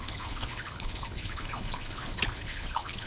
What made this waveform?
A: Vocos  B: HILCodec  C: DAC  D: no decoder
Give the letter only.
B